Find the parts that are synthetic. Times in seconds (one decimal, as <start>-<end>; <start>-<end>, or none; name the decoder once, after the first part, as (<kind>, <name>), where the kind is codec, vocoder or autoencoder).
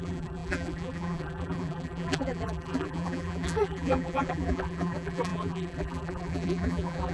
0.0-7.1 (vocoder, BigVGAN v2)